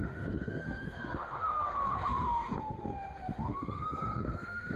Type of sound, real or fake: fake